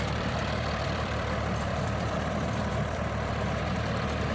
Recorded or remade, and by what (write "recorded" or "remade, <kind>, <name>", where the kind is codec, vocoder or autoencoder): remade, vocoder, BigVGAN v2